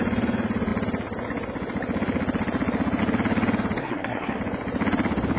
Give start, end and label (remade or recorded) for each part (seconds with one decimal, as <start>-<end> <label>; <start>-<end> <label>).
0.0-3.8 recorded; 3.8-4.4 remade; 4.4-5.4 recorded